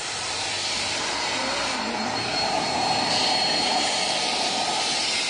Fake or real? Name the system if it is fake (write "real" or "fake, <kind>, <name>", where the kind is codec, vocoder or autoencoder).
fake, vocoder, BigVGAN v2